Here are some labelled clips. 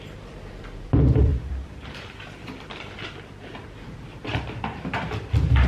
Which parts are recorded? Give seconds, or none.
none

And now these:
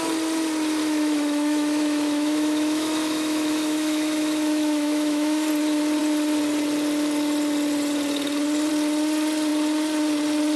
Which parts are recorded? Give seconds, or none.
0.0-0.8; 5.5-10.6

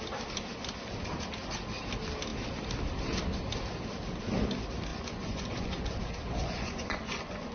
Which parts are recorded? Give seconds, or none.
0.0-4.9; 6.0-6.4

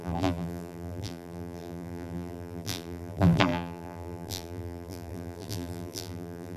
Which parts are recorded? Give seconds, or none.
none

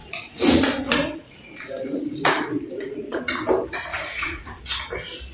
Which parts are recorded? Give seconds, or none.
3.2-3.9; 4.6-5.3

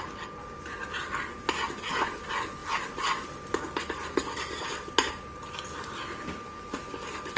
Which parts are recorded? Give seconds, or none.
0.0-7.4

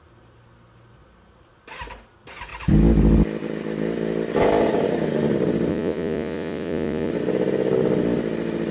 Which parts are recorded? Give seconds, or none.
0.0-5.7; 7.1-8.7

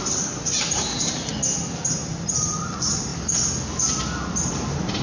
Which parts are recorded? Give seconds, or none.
1.3-1.9; 3.1-4.5